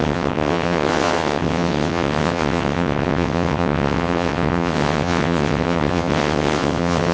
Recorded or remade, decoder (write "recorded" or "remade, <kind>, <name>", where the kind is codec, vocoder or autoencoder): remade, vocoder, WaveNeXt